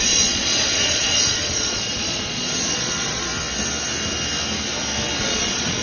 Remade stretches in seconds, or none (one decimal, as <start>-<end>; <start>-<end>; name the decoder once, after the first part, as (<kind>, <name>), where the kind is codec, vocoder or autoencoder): 0.0-3.3 (vocoder, Vocos); 5.2-5.8